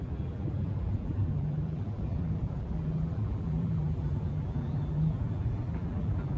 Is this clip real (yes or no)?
no